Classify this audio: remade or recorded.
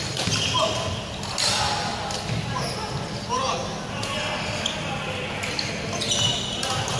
recorded